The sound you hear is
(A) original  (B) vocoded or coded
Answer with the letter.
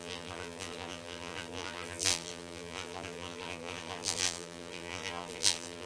B